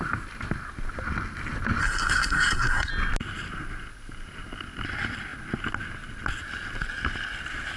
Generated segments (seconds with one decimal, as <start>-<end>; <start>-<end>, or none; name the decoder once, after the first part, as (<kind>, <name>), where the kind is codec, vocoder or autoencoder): 1.8-2.9 (codec, SNAC)